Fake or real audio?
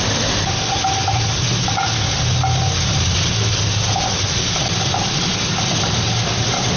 real